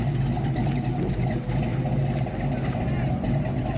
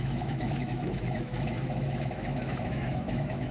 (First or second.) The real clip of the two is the first